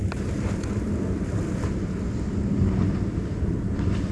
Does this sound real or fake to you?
real